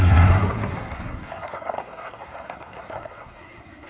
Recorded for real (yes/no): no